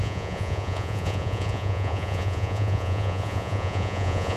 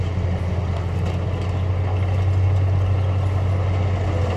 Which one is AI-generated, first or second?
first